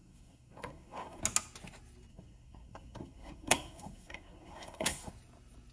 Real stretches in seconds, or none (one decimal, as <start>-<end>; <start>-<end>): 1.2-2.1; 5.1-5.7

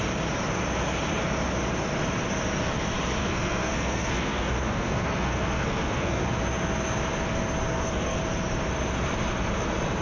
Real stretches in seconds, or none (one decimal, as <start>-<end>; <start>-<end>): 0.0-3.2; 6.2-7.7; 8.2-10.0

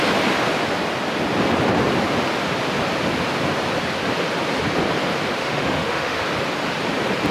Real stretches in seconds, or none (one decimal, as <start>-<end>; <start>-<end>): 0.0-5.4; 6.2-7.3

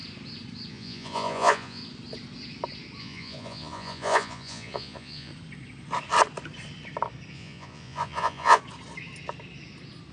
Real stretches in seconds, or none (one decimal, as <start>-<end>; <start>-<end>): 0.0-0.7; 1.8-3.0; 5.3-7.3; 8.6-10.1

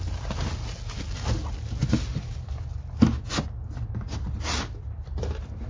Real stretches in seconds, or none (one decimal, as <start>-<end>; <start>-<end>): 0.0-5.7